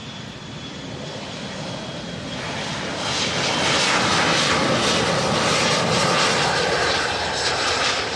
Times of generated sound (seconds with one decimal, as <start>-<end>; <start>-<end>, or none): none